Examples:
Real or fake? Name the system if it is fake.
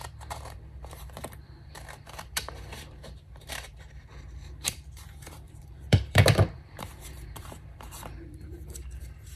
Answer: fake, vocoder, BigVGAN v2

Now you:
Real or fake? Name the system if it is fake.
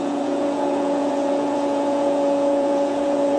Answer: fake, vocoder, Vocos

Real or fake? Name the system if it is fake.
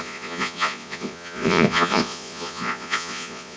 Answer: fake, vocoder, Vocos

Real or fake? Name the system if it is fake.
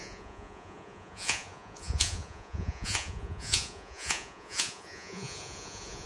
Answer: fake, vocoder, Vocos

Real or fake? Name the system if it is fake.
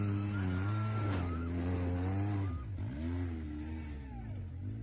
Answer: real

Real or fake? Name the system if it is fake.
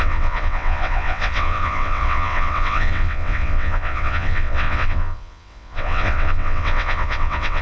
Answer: fake, vocoder, WaveNeXt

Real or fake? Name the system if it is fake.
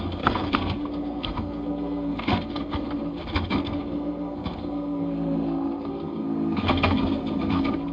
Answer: fake, codec, SNAC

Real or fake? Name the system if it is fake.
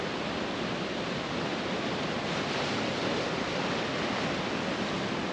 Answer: real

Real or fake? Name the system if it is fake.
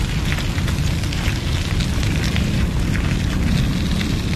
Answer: real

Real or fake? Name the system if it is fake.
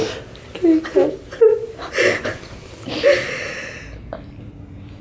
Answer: real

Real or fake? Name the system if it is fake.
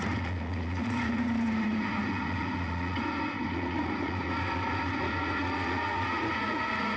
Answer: fake, vocoder, Vocos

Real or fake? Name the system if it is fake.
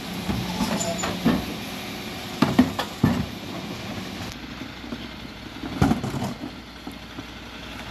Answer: real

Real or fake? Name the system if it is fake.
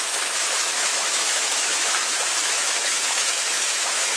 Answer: fake, autoencoder, DAC-VAE